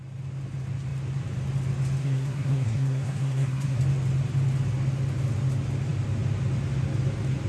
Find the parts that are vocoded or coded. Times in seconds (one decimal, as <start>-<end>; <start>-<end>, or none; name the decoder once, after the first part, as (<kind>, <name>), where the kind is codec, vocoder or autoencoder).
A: 2.0-3.8 (codec, SNAC)